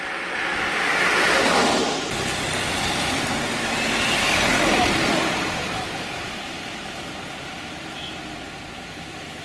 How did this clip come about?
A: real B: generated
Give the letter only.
A